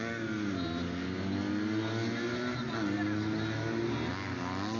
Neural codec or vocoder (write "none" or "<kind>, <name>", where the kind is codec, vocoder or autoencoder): none